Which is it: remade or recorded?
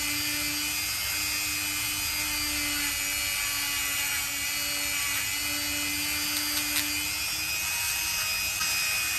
recorded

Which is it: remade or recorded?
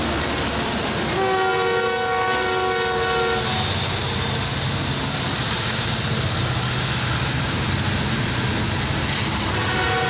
recorded